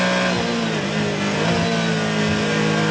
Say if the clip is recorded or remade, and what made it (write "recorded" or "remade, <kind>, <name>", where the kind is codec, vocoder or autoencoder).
recorded